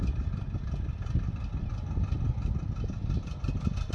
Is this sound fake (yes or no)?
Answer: no